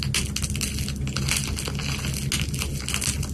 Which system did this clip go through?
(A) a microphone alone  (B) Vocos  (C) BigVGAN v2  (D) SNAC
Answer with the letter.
A